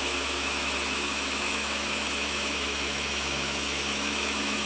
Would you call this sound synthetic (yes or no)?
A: yes